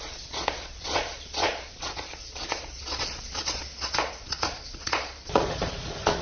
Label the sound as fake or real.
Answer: fake